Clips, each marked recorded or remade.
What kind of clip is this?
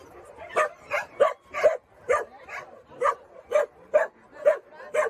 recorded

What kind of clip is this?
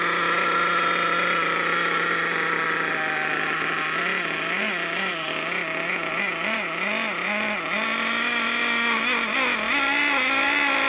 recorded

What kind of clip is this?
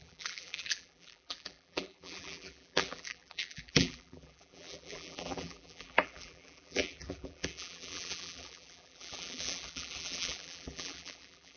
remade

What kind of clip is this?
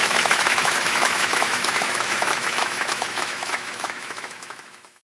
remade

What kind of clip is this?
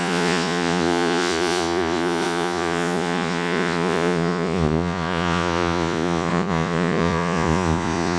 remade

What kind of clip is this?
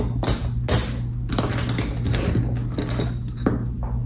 recorded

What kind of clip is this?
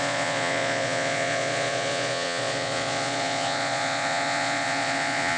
remade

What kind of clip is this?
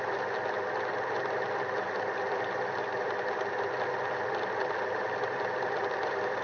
recorded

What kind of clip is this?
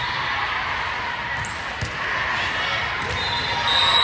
recorded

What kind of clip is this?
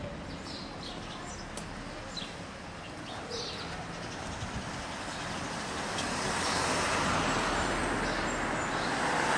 recorded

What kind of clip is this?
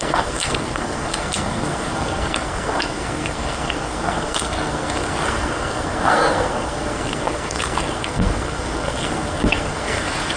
remade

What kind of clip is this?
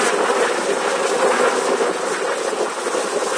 recorded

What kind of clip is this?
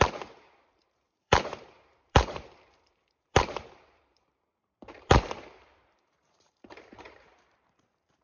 remade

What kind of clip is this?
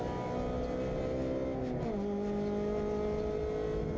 recorded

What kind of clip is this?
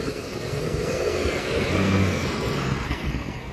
remade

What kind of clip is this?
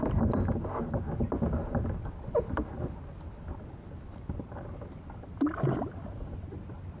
recorded